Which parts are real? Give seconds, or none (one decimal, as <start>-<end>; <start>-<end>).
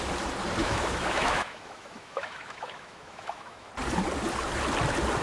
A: 0.0-0.6; 3.7-5.2